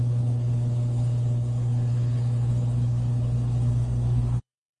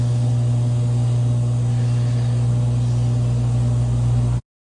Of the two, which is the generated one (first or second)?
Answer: first